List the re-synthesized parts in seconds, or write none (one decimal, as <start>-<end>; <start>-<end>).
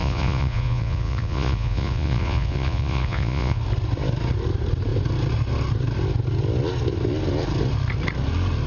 0.0-3.6